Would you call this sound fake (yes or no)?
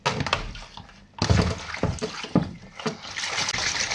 no